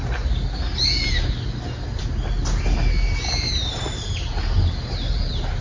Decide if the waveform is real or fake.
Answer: real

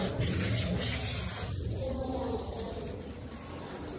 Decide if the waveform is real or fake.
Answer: fake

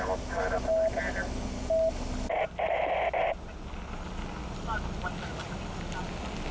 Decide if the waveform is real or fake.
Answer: real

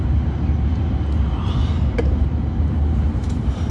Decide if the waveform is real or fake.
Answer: real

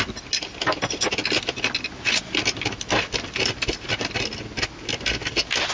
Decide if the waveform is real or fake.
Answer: real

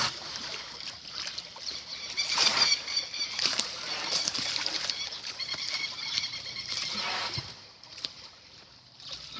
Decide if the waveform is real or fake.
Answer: fake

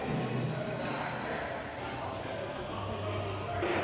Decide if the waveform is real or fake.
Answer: real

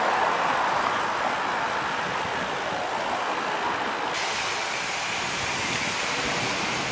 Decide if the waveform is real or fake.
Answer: real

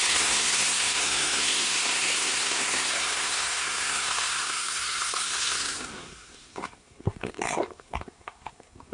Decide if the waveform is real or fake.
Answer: fake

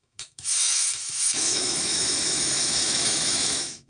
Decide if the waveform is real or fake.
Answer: fake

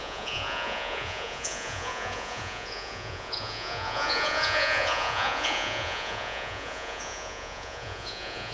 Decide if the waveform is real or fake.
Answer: fake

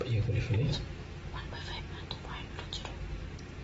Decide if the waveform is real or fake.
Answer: real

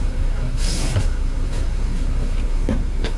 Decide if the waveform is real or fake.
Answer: fake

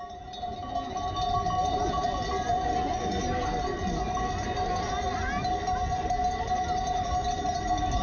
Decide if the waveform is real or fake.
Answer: real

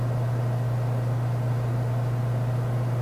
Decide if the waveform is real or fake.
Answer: real